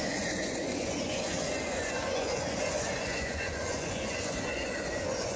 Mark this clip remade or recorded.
remade